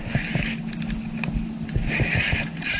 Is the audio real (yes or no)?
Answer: yes